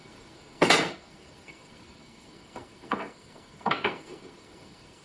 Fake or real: fake